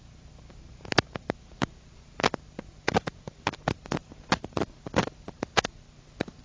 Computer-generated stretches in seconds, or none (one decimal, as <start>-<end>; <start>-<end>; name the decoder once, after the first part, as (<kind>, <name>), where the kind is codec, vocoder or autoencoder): none